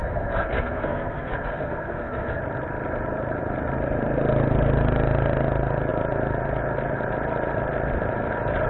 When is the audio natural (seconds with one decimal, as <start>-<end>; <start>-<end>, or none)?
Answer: 2.4-8.7